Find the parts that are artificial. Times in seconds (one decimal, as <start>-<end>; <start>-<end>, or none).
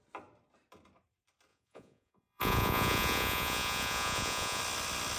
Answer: 1.5-4.6